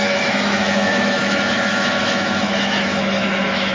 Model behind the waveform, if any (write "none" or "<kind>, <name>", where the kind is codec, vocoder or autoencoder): autoencoder, DAC-VAE